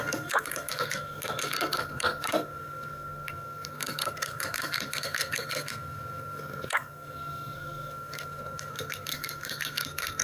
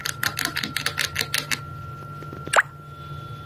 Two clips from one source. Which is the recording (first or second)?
second